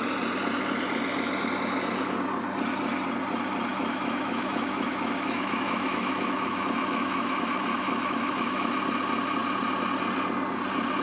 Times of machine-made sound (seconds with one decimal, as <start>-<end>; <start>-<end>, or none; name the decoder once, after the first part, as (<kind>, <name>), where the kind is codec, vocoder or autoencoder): 3.7-8.7 (autoencoder, DAC-VAE)